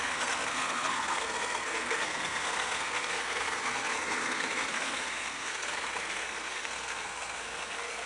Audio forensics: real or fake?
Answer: fake